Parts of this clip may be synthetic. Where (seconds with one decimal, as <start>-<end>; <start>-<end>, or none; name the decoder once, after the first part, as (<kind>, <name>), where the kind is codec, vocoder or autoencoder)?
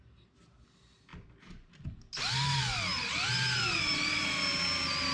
none